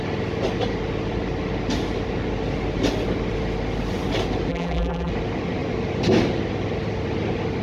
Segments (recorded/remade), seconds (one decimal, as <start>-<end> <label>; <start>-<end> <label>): 0.0-4.5 recorded; 4.5-5.1 remade; 5.1-7.6 recorded